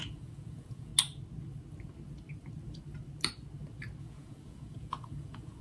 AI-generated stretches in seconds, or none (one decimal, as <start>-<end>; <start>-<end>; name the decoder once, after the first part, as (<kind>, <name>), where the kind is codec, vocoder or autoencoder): 0.0-0.9 (vocoder, Vocos); 4.0-5.6